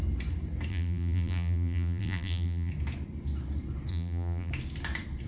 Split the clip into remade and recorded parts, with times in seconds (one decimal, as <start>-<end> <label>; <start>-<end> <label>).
0.0-0.7 recorded; 0.7-2.7 remade; 2.7-3.9 recorded; 3.9-4.5 remade; 4.5-5.3 recorded